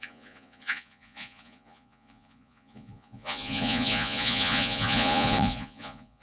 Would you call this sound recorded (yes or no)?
no